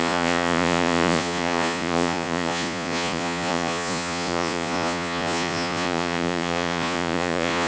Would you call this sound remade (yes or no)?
yes